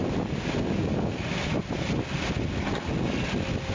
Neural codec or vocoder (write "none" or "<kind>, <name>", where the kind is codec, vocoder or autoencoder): none